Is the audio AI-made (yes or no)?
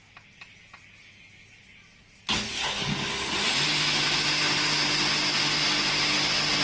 no